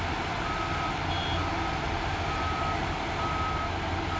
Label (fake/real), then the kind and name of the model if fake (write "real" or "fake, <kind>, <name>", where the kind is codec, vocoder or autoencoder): real